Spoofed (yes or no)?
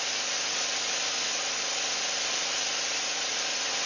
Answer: no